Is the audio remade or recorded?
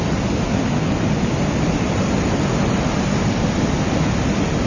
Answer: recorded